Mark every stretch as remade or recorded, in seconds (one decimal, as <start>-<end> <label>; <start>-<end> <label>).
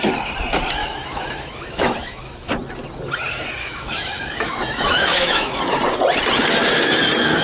0.0-0.8 recorded; 0.8-2.5 remade; 2.5-3.6 recorded; 3.6-5.6 remade; 5.6-7.4 recorded